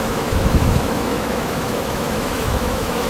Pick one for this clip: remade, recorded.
remade